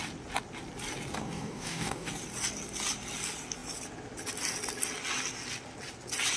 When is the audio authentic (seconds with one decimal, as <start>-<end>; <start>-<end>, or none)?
0.0-1.2; 2.1-6.4